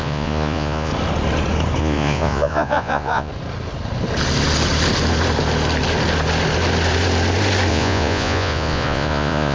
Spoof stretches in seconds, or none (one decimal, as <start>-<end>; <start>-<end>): 0.0-0.9; 1.8-3.3; 7.7-9.5